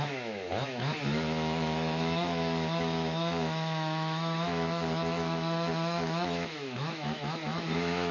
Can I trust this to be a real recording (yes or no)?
no